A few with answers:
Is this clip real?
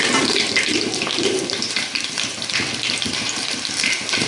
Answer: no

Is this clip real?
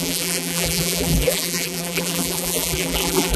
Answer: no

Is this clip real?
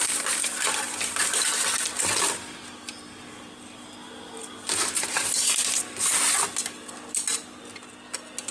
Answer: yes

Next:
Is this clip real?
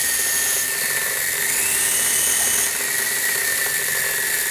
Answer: yes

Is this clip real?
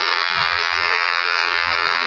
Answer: no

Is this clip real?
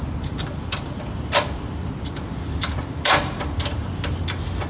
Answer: no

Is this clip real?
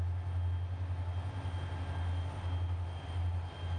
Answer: yes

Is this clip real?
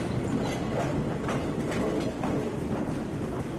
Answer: yes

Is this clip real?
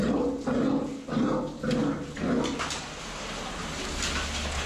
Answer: yes